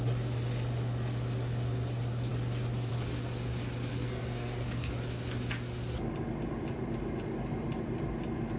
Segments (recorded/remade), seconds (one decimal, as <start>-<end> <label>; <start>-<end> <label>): 0.0-3.9 recorded; 3.9-4.9 remade; 4.9-8.6 recorded